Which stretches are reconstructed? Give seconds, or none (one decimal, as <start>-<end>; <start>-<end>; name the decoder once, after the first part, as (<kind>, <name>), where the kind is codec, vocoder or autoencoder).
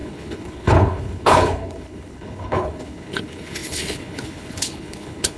0.0-5.4 (codec, HILCodec)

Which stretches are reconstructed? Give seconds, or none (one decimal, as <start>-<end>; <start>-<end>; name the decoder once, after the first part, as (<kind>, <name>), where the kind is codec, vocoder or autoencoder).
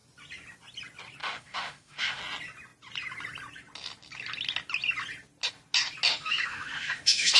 1.2-2.2 (autoencoder, DAC-VAE); 6.1-7.4